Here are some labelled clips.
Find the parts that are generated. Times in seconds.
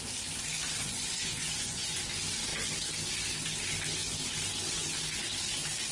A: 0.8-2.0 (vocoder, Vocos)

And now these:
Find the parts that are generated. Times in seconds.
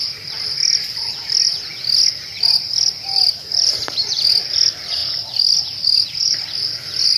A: 0.0-1.7 (vocoder, BigVGAN v2); 2.7-5.0; 5.6-7.2